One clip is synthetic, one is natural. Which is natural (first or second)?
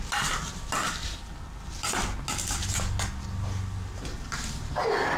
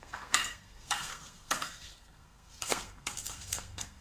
first